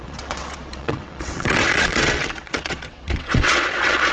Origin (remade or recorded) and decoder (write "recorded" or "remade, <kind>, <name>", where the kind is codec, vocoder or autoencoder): remade, vocoder, WaveNeXt